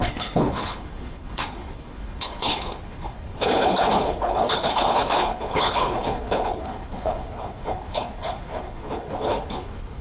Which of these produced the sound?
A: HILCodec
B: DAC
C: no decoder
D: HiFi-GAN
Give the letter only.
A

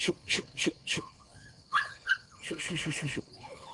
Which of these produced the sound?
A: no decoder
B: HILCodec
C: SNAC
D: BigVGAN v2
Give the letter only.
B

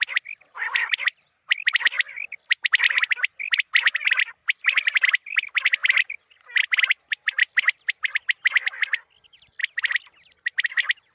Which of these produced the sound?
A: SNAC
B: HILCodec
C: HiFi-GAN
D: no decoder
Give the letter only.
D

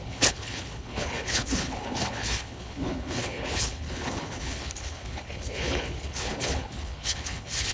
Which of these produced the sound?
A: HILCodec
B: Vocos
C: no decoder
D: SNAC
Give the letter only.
A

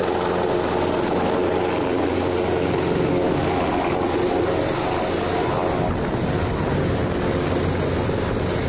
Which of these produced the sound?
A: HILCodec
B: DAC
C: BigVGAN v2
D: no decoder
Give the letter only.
D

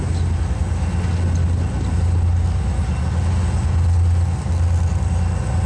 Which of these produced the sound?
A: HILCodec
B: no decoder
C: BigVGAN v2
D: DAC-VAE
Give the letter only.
B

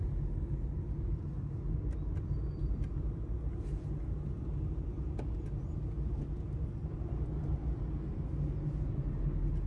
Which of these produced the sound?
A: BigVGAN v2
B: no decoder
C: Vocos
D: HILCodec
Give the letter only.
B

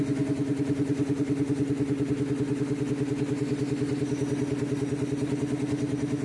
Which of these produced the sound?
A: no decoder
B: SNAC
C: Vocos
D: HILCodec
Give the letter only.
A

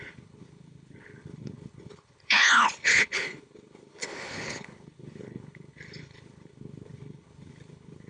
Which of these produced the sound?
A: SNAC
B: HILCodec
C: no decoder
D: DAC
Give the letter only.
B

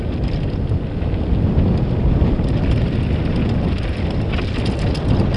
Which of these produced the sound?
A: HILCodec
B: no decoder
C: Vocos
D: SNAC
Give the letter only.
B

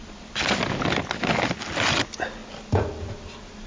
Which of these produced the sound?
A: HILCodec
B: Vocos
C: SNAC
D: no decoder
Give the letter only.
D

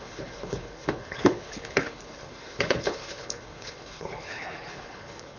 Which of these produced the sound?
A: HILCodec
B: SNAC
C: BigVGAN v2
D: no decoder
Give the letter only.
A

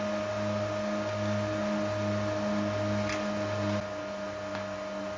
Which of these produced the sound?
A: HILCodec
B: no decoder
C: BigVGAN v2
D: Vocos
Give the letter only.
B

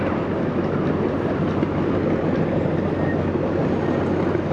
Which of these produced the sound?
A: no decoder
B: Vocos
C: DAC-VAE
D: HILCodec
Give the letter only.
A